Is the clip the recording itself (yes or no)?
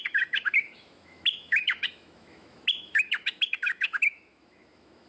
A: no